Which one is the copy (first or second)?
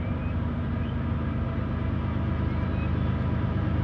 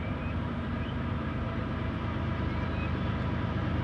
second